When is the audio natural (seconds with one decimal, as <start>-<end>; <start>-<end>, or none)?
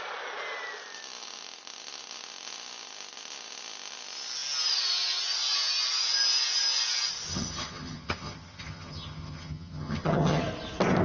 0.0-7.3; 10.4-11.0